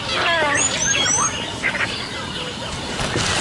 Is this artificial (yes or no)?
no